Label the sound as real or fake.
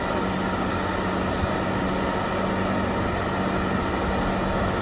real